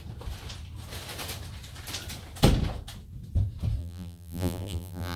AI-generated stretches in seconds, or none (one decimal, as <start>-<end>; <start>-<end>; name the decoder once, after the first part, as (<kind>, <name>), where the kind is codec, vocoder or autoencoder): 3.8-5.2 (vocoder, BigVGAN v2)